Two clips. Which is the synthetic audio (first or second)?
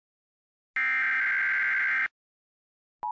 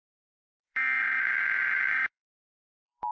second